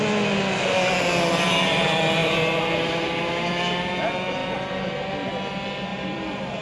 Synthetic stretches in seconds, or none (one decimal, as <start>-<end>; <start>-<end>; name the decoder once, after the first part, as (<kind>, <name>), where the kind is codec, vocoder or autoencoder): 5.9-6.6 (vocoder, BigVGAN v2)

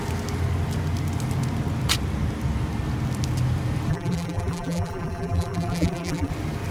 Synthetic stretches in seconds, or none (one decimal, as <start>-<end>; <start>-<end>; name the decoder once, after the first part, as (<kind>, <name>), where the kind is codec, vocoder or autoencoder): 3.9-6.3 (vocoder, BigVGAN v2)

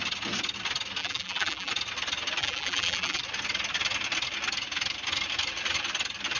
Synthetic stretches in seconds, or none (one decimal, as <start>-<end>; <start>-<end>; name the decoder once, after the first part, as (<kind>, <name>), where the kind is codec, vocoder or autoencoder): 1.0-1.7 (vocoder, BigVGAN v2); 2.4-3.2

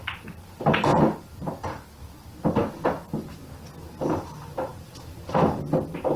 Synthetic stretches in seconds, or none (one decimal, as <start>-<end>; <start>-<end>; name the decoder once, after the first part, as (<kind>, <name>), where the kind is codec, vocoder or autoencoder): 0.0-0.9 (vocoder, BigVGAN v2); 3.9-6.2